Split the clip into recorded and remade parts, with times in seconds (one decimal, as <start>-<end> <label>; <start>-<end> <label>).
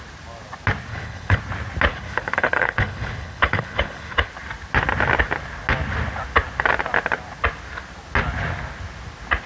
0.0-0.9 recorded; 0.9-1.4 remade; 1.4-1.9 recorded; 1.9-4.3 remade; 4.3-9.5 recorded